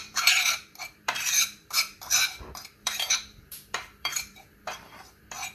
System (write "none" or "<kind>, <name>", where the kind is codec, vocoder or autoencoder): vocoder, BigVGAN v2